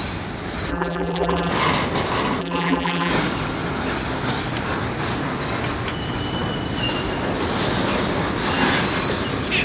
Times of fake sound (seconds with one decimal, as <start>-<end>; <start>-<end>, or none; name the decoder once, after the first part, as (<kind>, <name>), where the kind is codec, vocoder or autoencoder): 0.7-1.5 (vocoder, BigVGAN v2); 2.4-3.1